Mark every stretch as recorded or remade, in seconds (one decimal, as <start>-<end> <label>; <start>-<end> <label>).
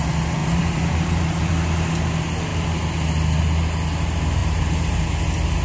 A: 0.0-0.4 recorded; 0.4-1.5 remade; 1.5-4.4 recorded; 4.4-5.1 remade; 5.1-5.6 recorded